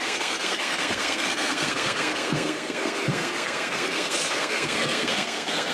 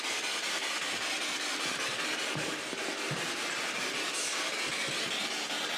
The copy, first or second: first